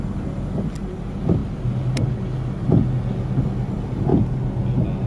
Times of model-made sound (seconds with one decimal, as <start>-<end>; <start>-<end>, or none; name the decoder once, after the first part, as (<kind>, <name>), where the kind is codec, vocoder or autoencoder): 0.0-1.4 (vocoder, BigVGAN v2); 3.4-4.1